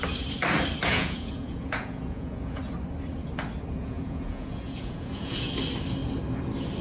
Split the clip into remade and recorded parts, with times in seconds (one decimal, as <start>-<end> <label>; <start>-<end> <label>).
0.0-0.9 recorded; 0.9-2.6 remade; 2.6-3.8 recorded; 3.8-5.5 remade; 5.5-6.8 recorded